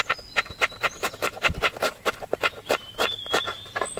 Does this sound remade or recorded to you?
recorded